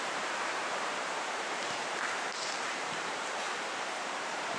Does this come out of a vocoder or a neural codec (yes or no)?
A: yes